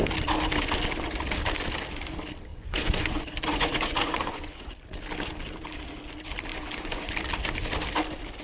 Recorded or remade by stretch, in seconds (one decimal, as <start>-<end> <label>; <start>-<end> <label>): 0.0-2.5 recorded; 2.5-4.7 remade; 4.7-6.5 recorded; 6.5-7.1 remade; 7.1-8.4 recorded